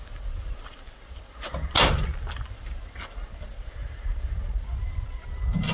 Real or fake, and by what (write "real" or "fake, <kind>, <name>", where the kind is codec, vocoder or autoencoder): real